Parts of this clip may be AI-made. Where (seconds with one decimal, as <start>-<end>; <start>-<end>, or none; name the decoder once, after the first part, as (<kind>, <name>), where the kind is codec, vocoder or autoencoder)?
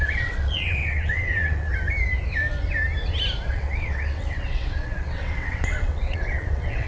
0.0-1.7 (vocoder, WaveNeXt); 3.5-6.9